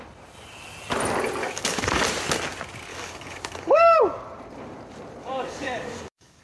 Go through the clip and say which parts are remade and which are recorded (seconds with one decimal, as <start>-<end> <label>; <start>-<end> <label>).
0.0-1.4 recorded; 1.4-1.9 remade; 1.9-2.9 recorded; 2.9-4.0 remade; 4.0-5.2 recorded; 5.2-6.4 remade